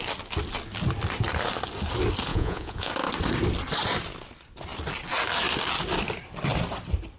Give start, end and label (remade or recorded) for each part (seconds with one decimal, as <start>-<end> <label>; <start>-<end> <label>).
0.0-2.3 recorded; 2.3-2.9 remade; 2.9-7.2 recorded